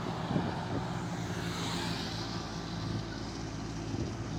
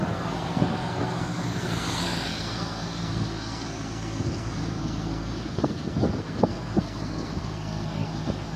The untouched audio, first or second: first